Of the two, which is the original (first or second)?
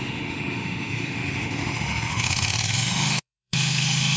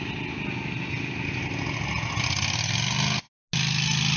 second